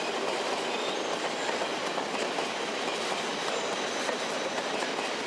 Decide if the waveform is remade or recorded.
recorded